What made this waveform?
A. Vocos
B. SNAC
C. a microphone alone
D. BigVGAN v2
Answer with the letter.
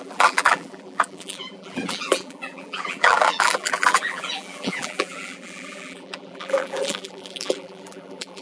D